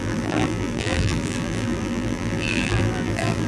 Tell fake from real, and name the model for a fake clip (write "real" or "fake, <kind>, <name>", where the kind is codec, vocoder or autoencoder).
fake, vocoder, BigVGAN v2